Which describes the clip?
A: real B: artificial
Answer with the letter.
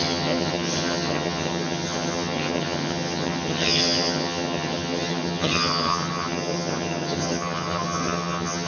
B